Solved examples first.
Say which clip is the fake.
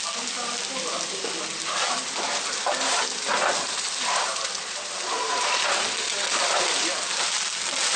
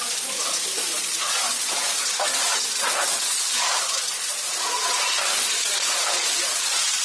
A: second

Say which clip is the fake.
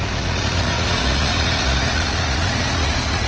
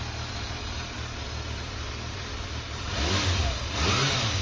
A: first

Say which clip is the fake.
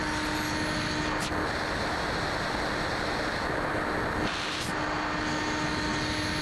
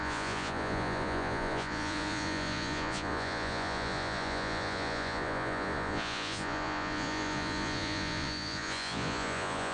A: second